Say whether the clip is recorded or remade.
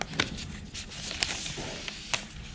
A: recorded